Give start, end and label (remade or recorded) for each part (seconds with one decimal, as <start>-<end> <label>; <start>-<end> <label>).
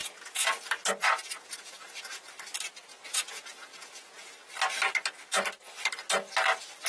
0.0-0.6 remade; 0.6-1.0 recorded; 1.0-2.2 remade; 2.2-2.9 recorded; 2.9-4.2 remade; 4.2-6.9 recorded